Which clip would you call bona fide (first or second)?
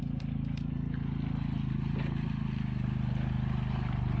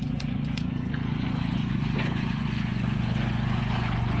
first